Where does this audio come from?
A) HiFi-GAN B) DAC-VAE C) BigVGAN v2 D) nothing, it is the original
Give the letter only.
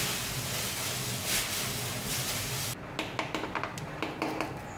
D